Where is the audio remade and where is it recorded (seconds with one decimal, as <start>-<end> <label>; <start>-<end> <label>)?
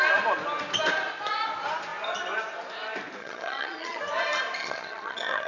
0.0-3.2 recorded; 3.2-4.0 remade; 4.0-4.6 recorded; 4.6-5.5 remade